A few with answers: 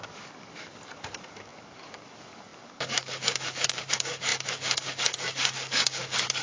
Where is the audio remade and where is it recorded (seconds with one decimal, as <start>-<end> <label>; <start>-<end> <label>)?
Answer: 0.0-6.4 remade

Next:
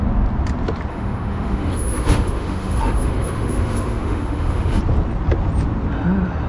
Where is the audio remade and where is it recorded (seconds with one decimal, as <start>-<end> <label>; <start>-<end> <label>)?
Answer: 0.0-0.9 recorded; 0.9-4.8 remade; 4.8-6.5 recorded

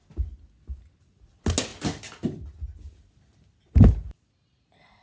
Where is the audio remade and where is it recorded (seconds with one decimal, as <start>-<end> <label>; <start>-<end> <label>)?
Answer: 0.0-5.0 recorded